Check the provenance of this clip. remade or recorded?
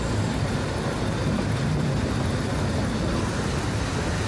recorded